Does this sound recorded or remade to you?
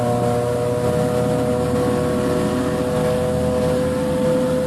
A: recorded